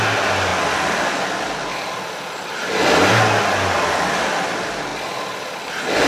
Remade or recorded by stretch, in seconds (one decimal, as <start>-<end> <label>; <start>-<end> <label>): 0.0-6.1 recorded